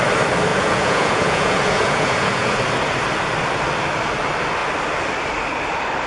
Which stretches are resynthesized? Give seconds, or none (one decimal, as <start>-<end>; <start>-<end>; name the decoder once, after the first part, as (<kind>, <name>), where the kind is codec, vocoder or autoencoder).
0.5-2.5 (vocoder, Vocos)